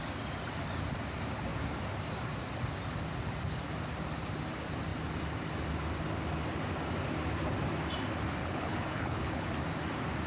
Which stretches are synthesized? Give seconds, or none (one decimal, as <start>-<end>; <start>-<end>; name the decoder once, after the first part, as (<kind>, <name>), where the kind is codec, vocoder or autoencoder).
8.4-9.5 (codec, HILCodec)